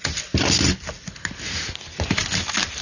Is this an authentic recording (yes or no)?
yes